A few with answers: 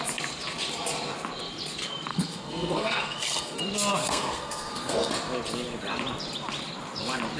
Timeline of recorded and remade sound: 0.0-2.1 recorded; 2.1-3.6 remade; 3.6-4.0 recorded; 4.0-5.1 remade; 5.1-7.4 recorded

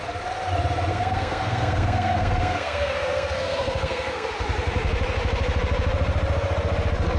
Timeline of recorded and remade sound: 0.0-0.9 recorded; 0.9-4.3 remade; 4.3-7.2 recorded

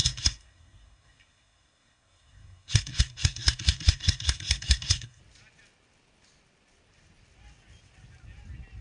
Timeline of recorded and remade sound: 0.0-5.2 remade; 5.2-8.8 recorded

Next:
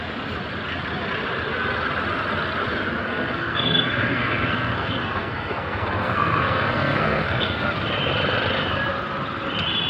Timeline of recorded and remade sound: 0.0-3.0 recorded; 3.0-7.7 remade; 7.7-9.9 recorded

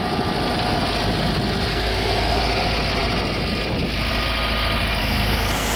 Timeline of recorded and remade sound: 0.0-1.7 recorded; 1.7-2.4 remade; 2.4-5.0 recorded; 5.0-5.8 remade

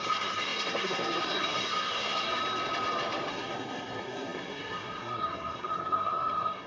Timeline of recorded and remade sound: 0.0-2.4 remade; 2.4-3.3 recorded; 3.3-6.7 remade